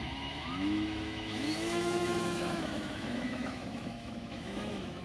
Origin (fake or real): fake